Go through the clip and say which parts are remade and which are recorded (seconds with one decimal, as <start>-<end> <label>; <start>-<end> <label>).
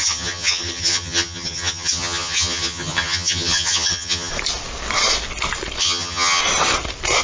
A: 0.0-4.3 remade; 4.3-5.8 recorded; 5.8-6.4 remade; 6.4-7.2 recorded